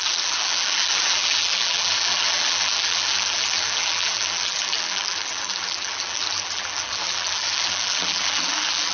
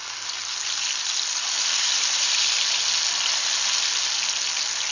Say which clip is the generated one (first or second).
first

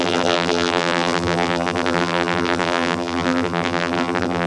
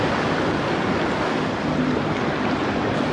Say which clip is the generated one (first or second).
first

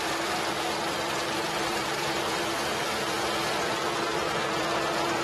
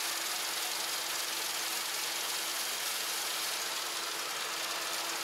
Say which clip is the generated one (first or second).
first